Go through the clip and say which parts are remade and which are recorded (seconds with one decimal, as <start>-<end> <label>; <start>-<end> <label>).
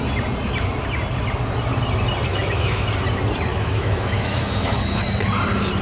0.0-2.3 recorded; 2.3-2.9 remade; 2.9-3.5 recorded; 3.5-5.0 remade; 5.0-5.8 recorded